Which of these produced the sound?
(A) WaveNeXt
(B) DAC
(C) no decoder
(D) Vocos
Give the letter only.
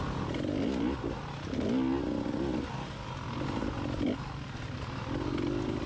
C